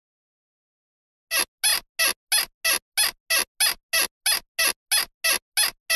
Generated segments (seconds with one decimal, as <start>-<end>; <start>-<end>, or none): none